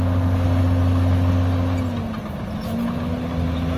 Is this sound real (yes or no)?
yes